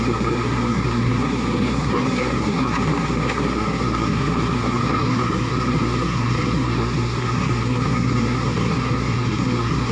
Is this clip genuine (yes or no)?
no